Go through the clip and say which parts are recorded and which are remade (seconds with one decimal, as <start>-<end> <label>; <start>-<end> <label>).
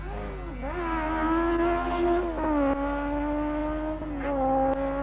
0.0-5.0 recorded